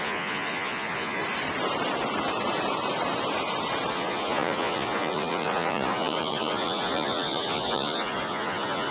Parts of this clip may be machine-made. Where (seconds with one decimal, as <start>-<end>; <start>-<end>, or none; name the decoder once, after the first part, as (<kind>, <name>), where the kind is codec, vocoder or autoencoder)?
0.0-1.2 (vocoder, Vocos); 3.9-8.9